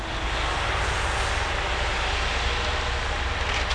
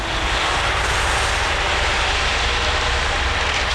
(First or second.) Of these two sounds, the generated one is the second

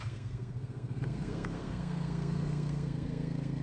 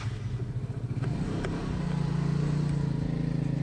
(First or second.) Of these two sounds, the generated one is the first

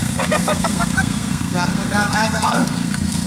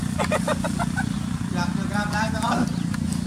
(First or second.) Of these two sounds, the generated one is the first